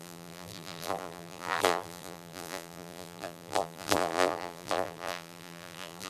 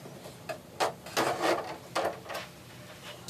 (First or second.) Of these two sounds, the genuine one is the second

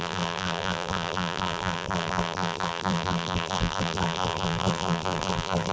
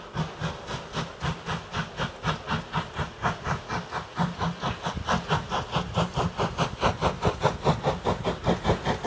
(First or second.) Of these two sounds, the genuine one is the second